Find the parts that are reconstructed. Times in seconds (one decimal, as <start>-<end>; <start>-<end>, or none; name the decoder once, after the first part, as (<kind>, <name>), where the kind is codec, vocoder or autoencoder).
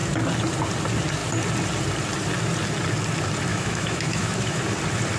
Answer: 3.5-4.6 (autoencoder, DAC-VAE)